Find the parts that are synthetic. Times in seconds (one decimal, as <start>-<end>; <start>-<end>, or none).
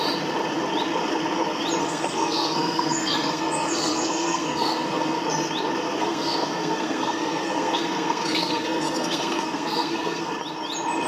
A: 1.8-5.2; 6.0-10.3